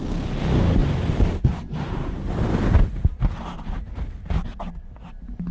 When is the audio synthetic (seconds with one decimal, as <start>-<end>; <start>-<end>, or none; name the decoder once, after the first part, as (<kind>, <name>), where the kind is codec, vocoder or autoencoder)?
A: 0.8-4.1 (vocoder, BigVGAN v2)